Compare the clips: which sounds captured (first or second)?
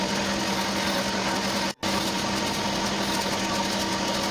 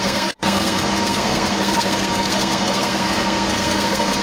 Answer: first